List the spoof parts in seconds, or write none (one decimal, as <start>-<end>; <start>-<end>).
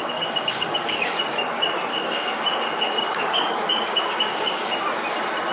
0.0-1.2; 1.9-4.7